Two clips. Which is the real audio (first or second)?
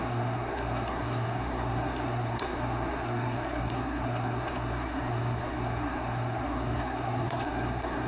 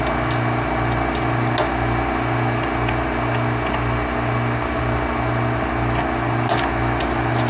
second